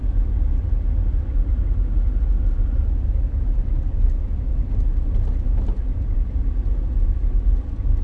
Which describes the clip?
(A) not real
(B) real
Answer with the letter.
B